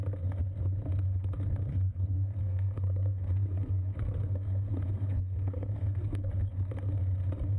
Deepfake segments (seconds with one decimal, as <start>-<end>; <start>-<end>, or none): 1.7-6.3